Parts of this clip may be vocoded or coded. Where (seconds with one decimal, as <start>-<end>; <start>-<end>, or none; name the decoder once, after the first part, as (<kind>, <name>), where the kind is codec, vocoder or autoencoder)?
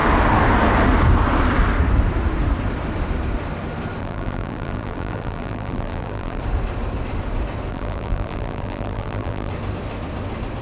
4.0-6.4 (vocoder, BigVGAN v2); 7.7-9.5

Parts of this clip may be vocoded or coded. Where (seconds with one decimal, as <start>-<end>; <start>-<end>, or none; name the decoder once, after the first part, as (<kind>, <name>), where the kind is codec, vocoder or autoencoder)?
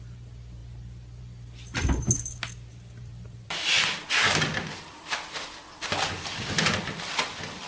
2.7-7.3 (vocoder, BigVGAN v2)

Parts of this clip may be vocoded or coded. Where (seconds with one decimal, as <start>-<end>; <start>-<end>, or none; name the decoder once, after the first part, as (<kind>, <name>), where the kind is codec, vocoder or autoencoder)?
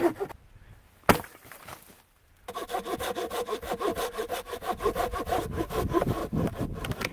3.9-5.2 (vocoder, BigVGAN v2); 6.2-7.1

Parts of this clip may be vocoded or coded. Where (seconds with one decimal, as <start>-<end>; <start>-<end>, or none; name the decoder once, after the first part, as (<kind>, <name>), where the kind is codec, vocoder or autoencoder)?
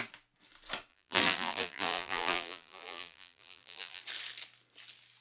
0.9-4.0 (vocoder, BigVGAN v2)